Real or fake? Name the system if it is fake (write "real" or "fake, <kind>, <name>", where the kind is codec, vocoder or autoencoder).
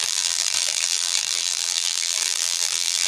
fake, vocoder, BigVGAN v2